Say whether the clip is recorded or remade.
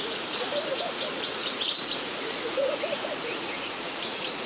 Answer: remade